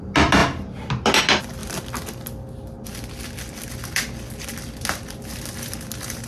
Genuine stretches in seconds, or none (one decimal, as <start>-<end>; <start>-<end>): 0.0-6.3